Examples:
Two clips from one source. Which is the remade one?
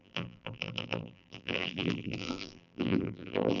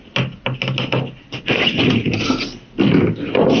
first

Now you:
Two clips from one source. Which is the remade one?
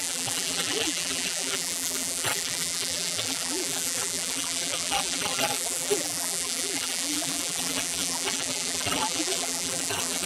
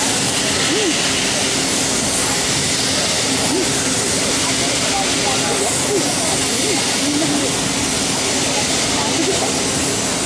first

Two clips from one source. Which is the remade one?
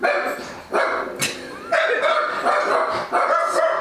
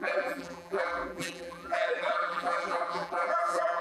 second